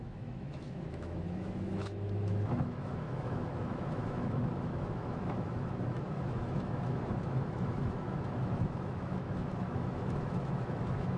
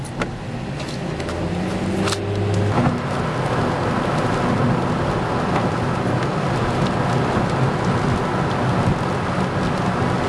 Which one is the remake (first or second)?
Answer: first